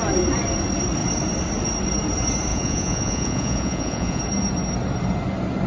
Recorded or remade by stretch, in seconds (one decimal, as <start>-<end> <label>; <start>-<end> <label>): 0.0-2.5 recorded; 2.5-4.2 remade; 4.2-5.7 recorded

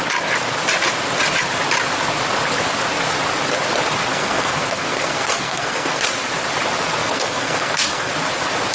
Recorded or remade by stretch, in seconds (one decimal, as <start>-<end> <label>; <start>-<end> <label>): 0.0-4.1 recorded; 4.1-6.0 remade; 6.0-7.0 recorded; 7.0-8.1 remade; 8.1-8.7 recorded

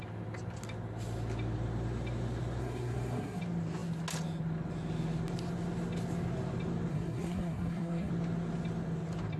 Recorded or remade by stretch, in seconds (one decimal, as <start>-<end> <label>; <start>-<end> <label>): 0.0-2.6 recorded; 2.6-3.4 remade; 3.4-6.9 recorded; 6.9-8.1 remade; 8.1-9.4 recorded

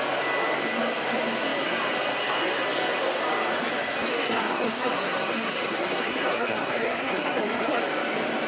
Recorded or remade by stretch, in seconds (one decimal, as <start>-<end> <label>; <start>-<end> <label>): 0.0-4.1 recorded; 4.1-7.8 remade; 7.8-8.5 recorded

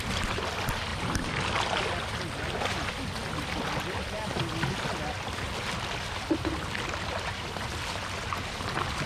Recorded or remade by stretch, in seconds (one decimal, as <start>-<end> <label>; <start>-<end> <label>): 0.0-9.1 recorded

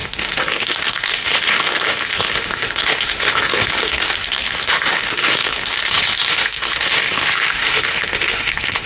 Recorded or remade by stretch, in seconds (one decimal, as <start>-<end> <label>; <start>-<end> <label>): 0.0-8.9 remade

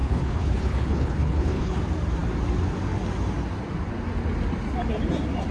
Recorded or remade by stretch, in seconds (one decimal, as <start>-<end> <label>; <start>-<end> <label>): 0.0-1.8 remade; 1.8-5.5 recorded